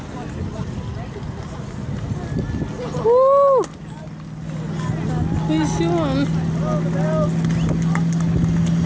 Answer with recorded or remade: recorded